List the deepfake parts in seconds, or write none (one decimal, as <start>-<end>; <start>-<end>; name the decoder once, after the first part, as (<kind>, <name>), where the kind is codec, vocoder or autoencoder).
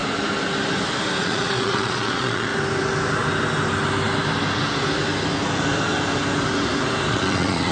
1.2-2.5 (vocoder, Vocos); 7.1-7.7